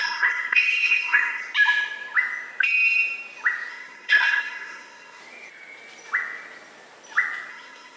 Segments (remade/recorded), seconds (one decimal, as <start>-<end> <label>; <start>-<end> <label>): 0.0-1.4 remade; 1.4-3.7 recorded; 3.7-5.2 remade; 5.2-7.5 recorded; 7.5-8.0 remade